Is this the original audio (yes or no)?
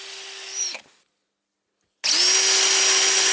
yes